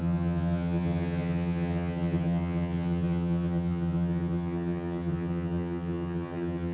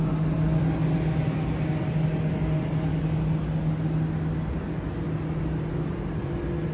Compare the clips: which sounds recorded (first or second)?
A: second